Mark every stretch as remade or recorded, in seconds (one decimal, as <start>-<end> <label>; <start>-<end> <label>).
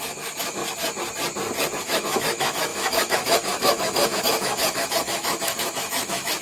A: 0.0-0.6 remade; 0.6-1.8 recorded; 1.8-6.4 remade